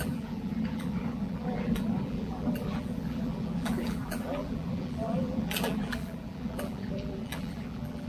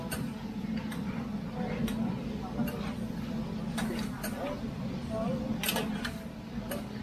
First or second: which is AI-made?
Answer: first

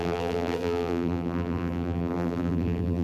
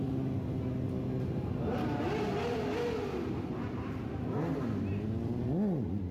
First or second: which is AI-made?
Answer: first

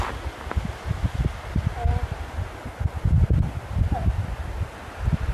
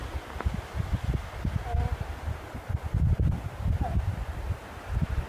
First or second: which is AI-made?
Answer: second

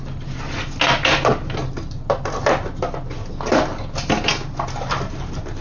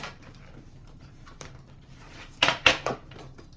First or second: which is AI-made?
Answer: second